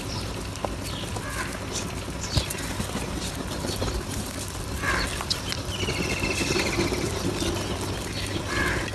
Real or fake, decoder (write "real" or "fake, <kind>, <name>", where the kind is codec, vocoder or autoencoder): real